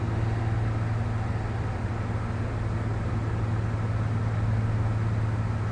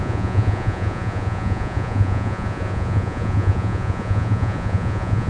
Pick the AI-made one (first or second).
second